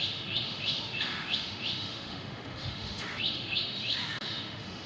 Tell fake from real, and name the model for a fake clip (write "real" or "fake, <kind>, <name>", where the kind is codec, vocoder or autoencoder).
fake, autoencoder, DAC-VAE